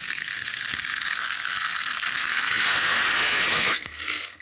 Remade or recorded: remade